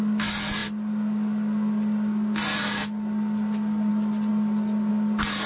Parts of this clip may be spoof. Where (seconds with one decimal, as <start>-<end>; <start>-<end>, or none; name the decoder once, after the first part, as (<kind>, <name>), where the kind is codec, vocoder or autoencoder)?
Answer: none